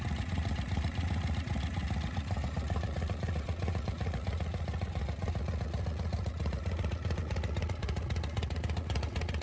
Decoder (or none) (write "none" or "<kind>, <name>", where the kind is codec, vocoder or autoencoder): vocoder, Vocos